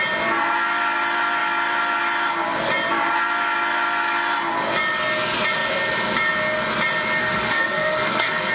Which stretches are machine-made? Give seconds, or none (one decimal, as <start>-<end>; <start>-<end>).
7.2-8.5